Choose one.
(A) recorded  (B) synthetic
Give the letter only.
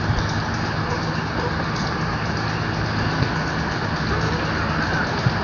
A